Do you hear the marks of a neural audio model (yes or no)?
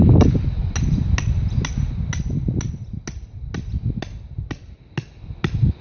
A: no